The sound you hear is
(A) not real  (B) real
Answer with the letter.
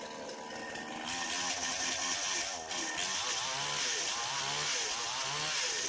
B